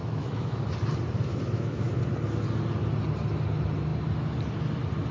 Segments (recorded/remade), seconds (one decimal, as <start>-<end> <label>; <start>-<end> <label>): 0.0-0.6 remade; 0.6-1.3 recorded; 1.3-2.0 remade; 2.0-5.1 recorded